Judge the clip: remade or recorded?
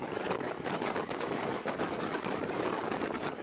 remade